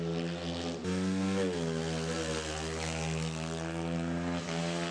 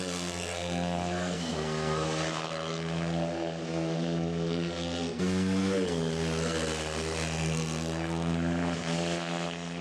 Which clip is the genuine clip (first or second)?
first